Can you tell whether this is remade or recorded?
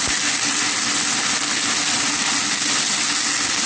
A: recorded